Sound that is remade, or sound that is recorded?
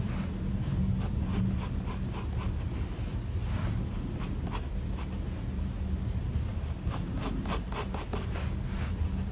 recorded